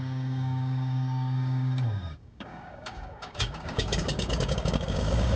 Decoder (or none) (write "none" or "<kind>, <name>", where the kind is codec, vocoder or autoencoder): codec, DAC